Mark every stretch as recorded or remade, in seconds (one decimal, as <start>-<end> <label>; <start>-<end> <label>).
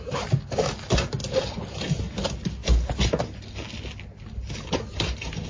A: 0.0-5.5 recorded